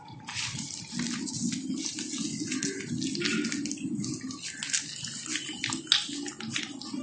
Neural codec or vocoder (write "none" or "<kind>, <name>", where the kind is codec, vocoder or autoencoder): none